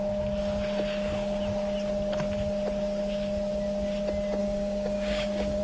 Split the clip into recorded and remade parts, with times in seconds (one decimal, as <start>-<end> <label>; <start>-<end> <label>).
0.0-4.4 recorded; 4.4-5.6 remade